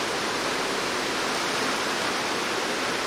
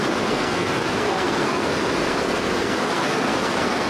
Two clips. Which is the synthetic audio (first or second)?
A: second